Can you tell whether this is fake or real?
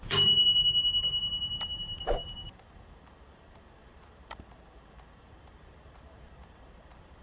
fake